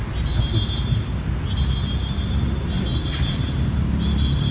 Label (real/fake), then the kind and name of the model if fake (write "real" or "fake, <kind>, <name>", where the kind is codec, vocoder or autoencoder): real